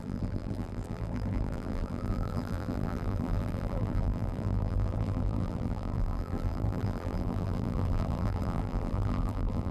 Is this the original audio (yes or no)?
no